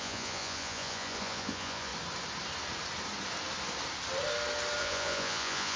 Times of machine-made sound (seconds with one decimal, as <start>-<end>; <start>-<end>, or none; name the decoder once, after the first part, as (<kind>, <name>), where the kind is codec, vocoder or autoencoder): 0.0-1.9 (vocoder, Vocos); 4.8-5.8